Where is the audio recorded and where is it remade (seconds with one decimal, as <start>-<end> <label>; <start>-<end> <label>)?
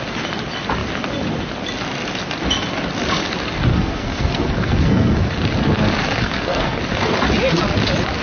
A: 0.0-3.7 recorded; 3.7-5.3 remade; 5.3-6.2 recorded; 6.2-6.8 remade; 6.8-8.2 recorded